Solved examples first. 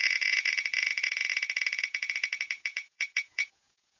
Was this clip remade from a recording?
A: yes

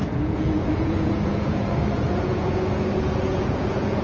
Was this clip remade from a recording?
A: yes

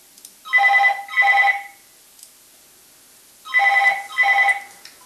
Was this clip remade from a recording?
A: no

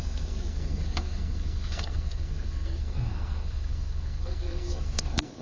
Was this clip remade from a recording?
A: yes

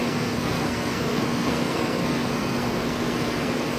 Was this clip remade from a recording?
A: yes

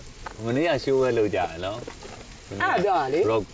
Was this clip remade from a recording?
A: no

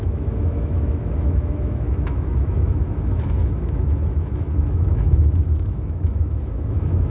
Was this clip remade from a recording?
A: yes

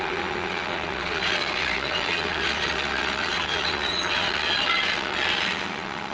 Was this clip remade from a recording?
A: yes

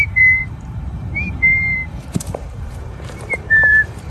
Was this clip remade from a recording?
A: yes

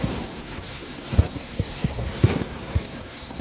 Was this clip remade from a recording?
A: yes